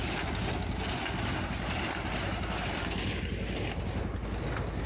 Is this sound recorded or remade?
recorded